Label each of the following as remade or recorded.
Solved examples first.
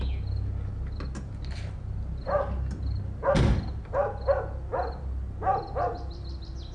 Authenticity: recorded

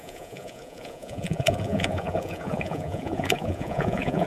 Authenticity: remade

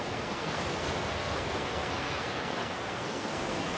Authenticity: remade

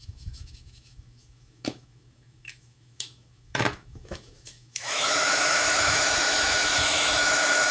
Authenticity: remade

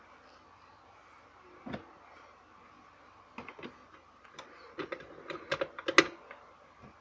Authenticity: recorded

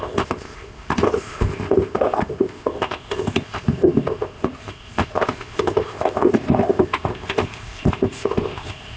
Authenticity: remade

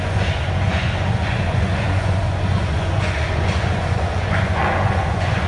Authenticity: remade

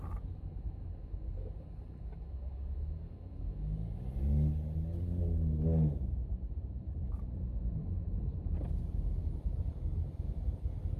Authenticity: recorded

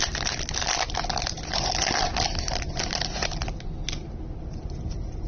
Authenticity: recorded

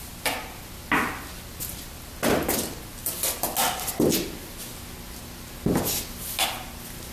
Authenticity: recorded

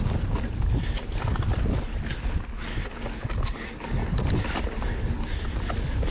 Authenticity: recorded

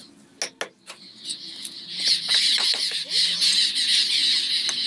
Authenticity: recorded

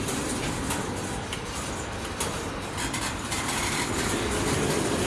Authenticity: remade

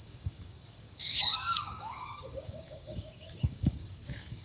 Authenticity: remade